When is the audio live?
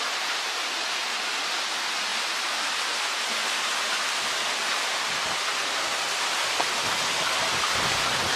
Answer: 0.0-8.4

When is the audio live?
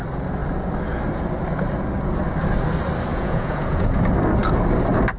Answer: 0.0-3.1; 4.0-5.2